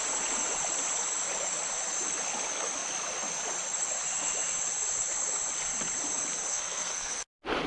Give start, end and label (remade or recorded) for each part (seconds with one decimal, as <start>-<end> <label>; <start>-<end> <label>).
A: 0.0-6.5 recorded; 6.5-7.1 remade; 7.1-7.7 recorded